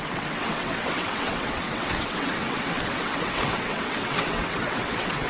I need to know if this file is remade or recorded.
remade